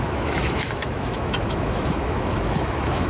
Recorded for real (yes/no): no